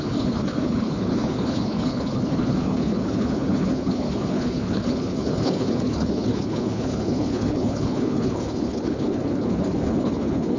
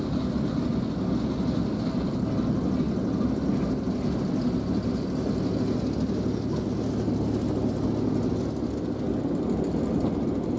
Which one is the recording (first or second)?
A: second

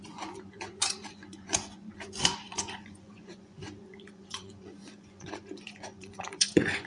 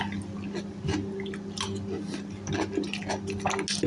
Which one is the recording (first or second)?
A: second